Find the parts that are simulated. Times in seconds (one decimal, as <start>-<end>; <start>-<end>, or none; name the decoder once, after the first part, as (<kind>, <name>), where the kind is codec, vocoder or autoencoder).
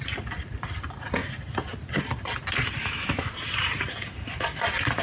2.8-3.3 (autoencoder, DAC-VAE)